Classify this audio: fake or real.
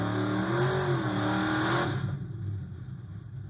real